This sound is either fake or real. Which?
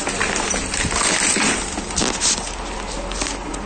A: real